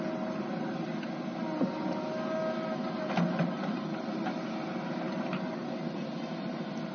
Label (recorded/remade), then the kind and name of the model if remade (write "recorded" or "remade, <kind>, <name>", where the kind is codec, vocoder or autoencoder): recorded